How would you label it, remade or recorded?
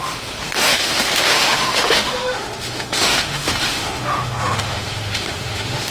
remade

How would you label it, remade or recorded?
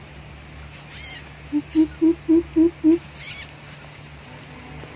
recorded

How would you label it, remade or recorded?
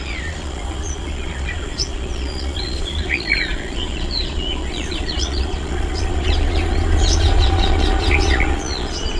remade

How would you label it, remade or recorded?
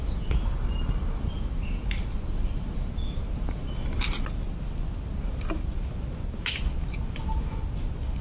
recorded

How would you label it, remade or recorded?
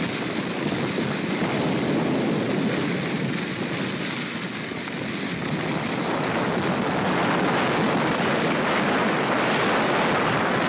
recorded